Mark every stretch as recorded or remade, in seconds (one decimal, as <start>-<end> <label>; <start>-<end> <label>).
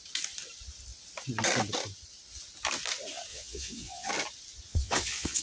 0.0-3.3 recorded; 3.3-4.1 remade; 4.1-4.7 recorded; 4.7-5.4 remade